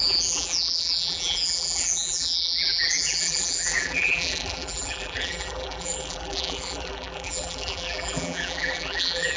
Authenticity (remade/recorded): remade